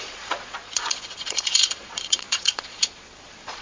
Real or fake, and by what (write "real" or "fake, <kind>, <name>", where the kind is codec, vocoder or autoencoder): fake, vocoder, Vocos